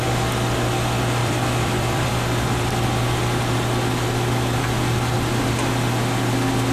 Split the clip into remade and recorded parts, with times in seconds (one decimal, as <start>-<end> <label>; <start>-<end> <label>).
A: 0.0-1.2 recorded; 1.2-2.1 remade; 2.1-6.7 recorded